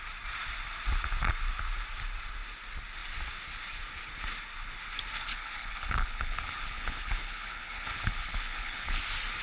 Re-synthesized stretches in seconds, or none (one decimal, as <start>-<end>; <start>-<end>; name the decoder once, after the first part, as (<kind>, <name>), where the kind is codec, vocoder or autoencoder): 5.3-9.0 (codec, HILCodec)